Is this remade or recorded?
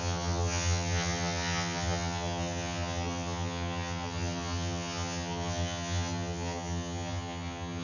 remade